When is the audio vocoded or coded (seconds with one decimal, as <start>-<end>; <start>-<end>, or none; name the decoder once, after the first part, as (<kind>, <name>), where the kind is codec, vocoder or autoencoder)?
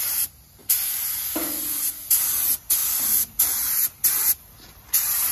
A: none